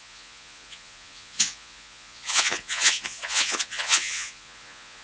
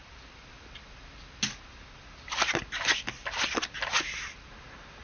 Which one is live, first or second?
second